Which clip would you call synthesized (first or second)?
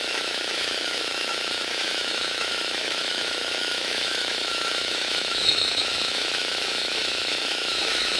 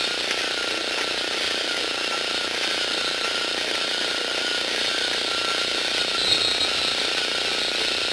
first